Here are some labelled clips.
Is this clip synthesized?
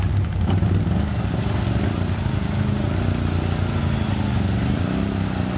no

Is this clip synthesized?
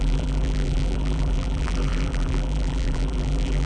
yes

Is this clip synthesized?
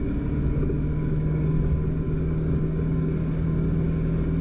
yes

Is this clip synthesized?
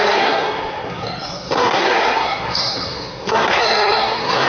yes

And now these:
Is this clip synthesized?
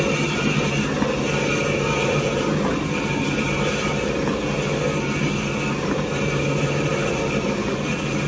no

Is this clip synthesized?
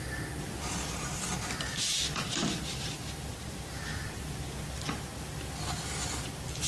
no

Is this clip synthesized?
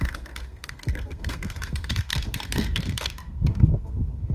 yes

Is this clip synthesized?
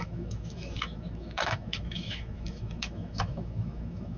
yes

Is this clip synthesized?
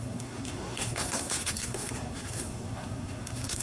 yes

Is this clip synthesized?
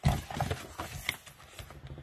no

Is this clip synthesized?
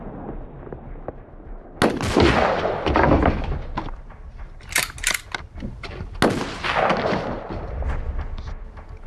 no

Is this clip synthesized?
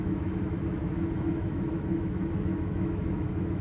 yes